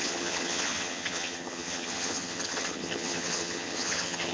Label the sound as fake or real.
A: fake